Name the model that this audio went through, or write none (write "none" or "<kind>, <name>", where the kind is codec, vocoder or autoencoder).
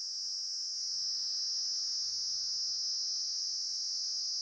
none